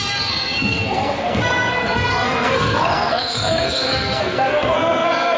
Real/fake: fake